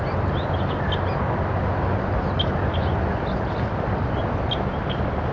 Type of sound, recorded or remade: recorded